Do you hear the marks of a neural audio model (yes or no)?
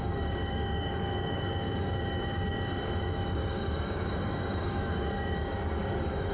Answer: yes